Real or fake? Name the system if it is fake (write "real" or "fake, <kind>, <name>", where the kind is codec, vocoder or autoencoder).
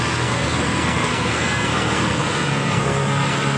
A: fake, codec, SNAC